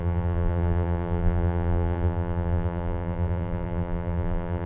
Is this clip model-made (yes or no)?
yes